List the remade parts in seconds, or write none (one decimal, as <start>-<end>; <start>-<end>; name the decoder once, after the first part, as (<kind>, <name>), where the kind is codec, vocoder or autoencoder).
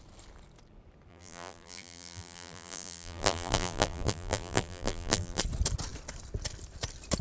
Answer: 1.1-5.4 (vocoder, BigVGAN v2)